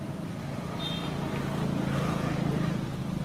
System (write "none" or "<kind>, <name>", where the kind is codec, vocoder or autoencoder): none